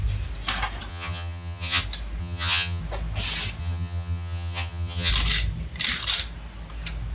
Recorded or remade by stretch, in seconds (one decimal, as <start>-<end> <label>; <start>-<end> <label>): 0.0-0.9 recorded; 0.9-1.8 remade; 1.8-2.2 recorded; 2.2-2.8 remade; 2.8-3.6 recorded; 3.6-5.1 remade; 5.1-7.1 recorded